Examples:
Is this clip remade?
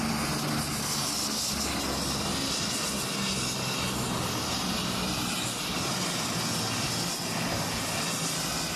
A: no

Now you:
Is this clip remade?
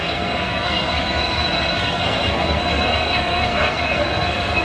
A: yes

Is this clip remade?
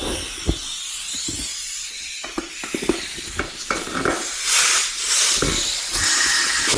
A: no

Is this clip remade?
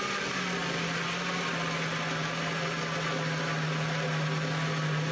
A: no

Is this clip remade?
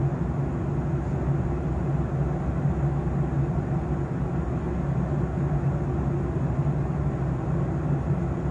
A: no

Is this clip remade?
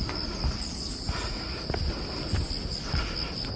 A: no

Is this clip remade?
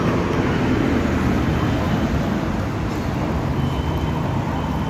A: no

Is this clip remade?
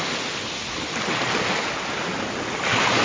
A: no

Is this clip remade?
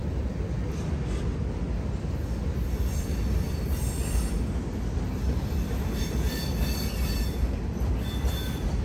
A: no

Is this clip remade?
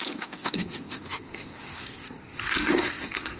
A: yes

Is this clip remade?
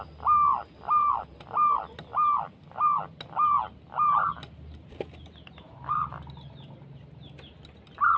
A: no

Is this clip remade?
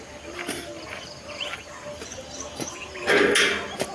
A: no